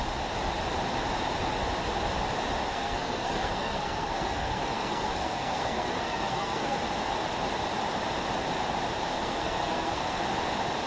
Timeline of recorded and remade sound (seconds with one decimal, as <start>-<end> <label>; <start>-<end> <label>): 0.0-2.7 recorded; 2.7-6.8 remade; 6.8-9.1 recorded; 9.1-10.2 remade; 10.2-10.9 recorded